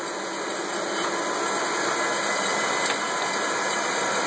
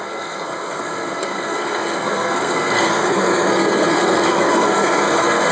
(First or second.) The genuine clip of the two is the first